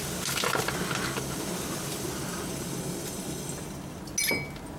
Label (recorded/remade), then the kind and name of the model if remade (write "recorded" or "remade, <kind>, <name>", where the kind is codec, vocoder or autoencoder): recorded